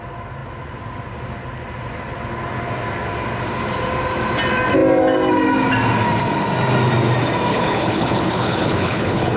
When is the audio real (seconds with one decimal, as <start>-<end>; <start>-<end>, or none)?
0.0-7.5